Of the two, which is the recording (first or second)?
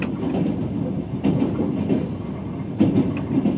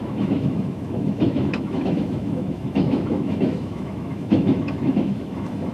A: first